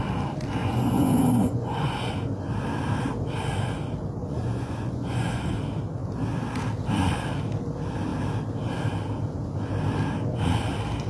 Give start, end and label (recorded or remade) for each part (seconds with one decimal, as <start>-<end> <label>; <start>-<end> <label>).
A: 0.0-0.6 recorded; 0.6-2.1 remade; 2.1-4.2 recorded; 4.2-5.6 remade; 5.6-11.1 recorded